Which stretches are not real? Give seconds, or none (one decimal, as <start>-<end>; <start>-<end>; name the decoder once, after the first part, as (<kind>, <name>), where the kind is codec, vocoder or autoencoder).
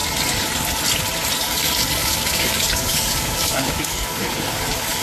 1.4-5.0 (codec, DAC)